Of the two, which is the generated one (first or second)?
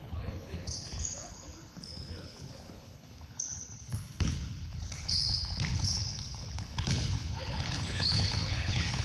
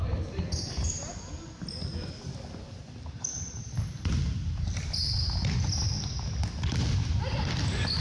first